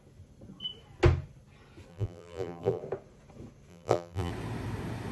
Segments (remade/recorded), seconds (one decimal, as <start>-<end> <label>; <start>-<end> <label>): 0.0-1.9 recorded; 1.9-2.8 remade; 2.8-3.7 recorded; 3.7-4.3 remade; 4.3-5.1 recorded